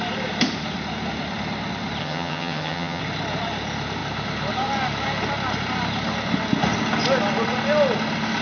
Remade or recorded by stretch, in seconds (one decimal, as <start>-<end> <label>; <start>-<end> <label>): 0.0-2.0 recorded; 2.0-3.0 remade; 3.0-8.4 recorded